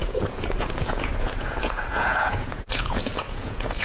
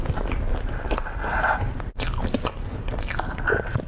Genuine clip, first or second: second